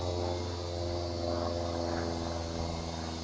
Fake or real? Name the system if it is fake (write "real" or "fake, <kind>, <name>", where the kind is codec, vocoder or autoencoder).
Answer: real